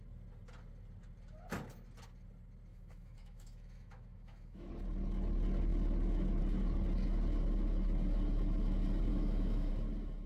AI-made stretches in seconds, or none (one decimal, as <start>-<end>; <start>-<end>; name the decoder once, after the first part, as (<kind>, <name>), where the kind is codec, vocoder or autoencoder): 2.7-4.7 (autoencoder, DAC-VAE); 9.1-9.7